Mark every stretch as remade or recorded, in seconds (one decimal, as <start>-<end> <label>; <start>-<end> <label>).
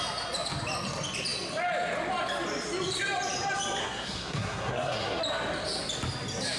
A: 0.0-3.8 recorded; 3.8-5.2 remade; 5.2-6.6 recorded